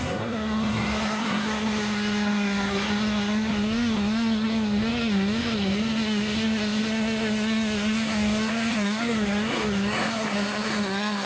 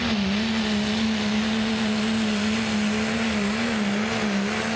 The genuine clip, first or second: second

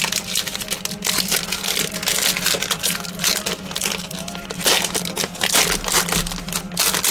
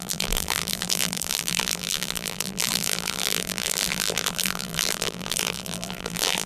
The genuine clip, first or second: first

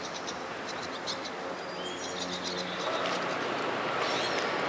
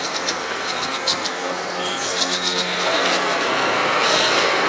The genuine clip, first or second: first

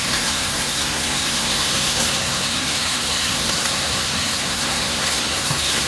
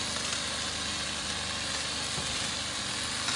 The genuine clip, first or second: second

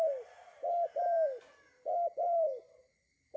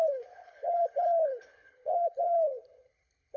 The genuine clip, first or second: first